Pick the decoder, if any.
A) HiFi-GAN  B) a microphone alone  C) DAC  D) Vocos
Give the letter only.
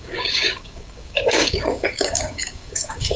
C